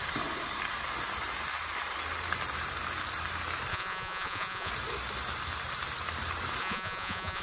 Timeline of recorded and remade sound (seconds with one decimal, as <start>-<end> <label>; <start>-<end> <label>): 0.0-3.7 recorded; 3.7-4.7 remade; 4.7-6.6 recorded; 6.6-7.4 remade